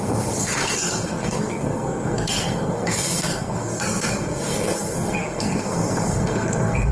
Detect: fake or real fake